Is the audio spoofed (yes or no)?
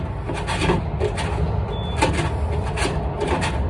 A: no